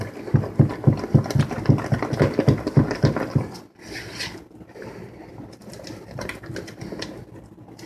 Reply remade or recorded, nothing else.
recorded